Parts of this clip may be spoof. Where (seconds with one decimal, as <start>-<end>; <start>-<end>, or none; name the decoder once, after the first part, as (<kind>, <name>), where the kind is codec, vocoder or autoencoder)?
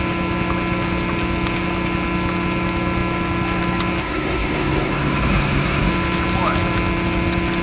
4.0-5.9 (codec, SNAC)